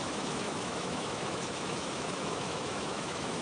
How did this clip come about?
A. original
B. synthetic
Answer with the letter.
B